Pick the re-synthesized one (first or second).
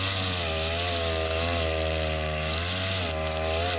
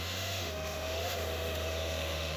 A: second